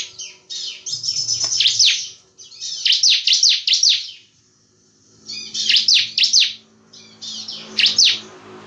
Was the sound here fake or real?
real